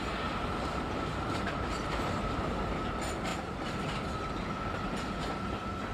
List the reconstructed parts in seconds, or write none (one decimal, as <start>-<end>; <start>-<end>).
1.1-2.7